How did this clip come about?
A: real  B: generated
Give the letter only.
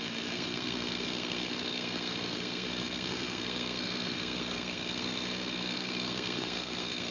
B